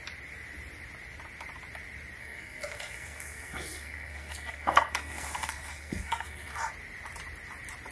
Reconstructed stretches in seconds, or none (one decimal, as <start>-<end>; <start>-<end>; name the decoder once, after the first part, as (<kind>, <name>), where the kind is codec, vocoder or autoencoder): 2.2-6.7 (codec, SNAC)